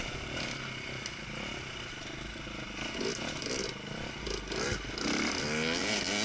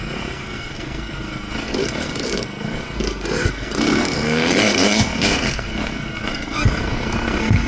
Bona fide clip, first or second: first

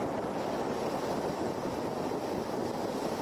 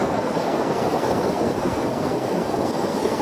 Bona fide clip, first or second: first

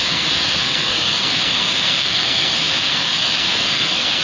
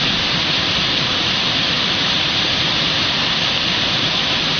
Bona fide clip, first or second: second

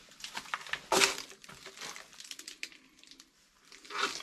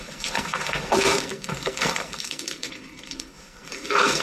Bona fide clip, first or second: first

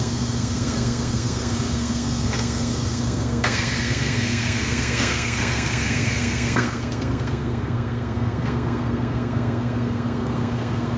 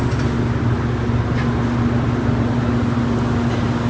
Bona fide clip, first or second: second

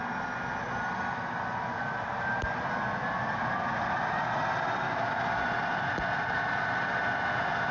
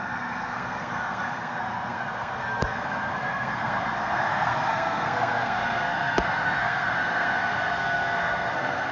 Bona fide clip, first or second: first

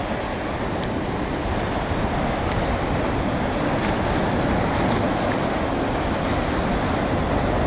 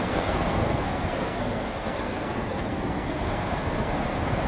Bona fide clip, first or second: first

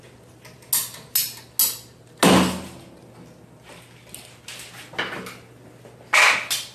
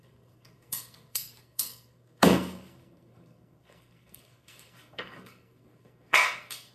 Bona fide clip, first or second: first